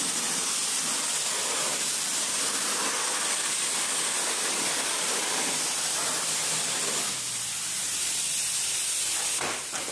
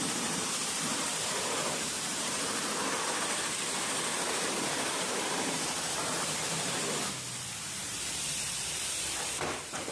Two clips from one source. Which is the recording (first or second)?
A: first